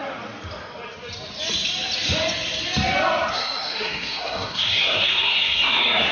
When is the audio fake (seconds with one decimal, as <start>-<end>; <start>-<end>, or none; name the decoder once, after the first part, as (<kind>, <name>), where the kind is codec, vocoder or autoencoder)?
3.3-6.1 (codec, SNAC)